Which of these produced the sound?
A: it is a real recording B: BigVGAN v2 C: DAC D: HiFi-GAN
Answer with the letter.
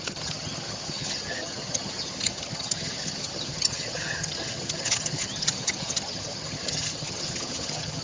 D